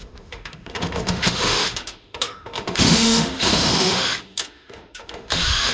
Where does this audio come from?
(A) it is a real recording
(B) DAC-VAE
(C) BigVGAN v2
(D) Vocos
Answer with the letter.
B